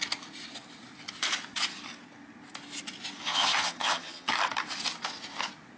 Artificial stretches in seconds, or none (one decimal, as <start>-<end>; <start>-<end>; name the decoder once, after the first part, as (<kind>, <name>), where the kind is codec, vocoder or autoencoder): 3.2-4.3 (vocoder, HiFi-GAN)